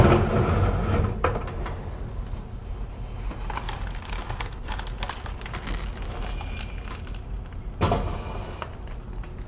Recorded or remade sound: recorded